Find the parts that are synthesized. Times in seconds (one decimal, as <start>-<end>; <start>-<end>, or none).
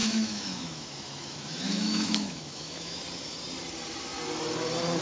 0.0-3.0